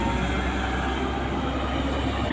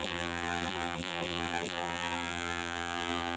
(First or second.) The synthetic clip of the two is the second